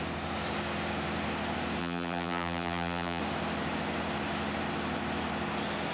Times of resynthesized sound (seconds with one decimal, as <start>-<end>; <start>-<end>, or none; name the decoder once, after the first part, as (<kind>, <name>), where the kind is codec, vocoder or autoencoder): 1.8-3.2 (vocoder, BigVGAN v2)